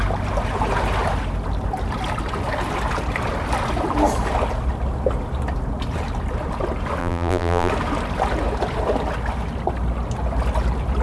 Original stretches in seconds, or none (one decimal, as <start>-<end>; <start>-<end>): 0.0-7.0; 7.7-11.0